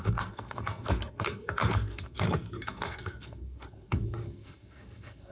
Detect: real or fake fake